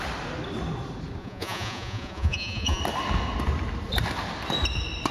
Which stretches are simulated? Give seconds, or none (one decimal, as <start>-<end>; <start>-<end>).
1.2-2.8